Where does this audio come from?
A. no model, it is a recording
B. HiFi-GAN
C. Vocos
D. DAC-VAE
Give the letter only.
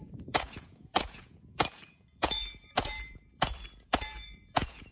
C